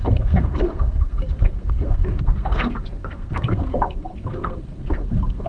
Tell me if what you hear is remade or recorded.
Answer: remade